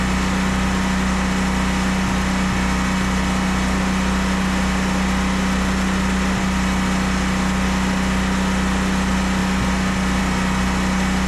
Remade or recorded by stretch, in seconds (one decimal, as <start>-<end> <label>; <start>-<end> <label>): 0.0-11.3 recorded